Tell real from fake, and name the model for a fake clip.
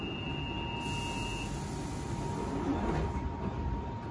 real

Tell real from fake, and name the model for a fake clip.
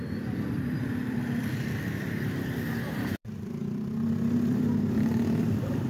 fake, vocoder, BigVGAN v2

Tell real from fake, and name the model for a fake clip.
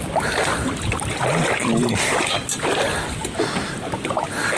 real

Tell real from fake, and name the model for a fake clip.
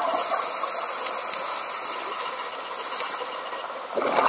real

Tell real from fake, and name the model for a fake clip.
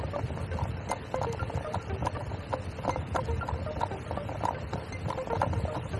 real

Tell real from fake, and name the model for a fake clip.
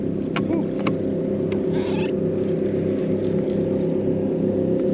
real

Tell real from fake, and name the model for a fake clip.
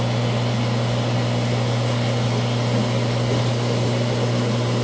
real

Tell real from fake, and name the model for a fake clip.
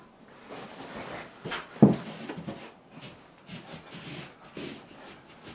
real